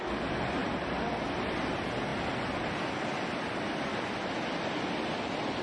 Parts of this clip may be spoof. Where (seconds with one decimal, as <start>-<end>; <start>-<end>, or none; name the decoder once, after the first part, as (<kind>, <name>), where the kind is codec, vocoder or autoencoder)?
0.6-1.2 (vocoder, BigVGAN v2)